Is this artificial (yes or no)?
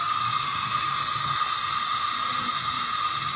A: no